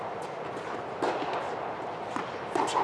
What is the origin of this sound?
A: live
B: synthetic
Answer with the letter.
A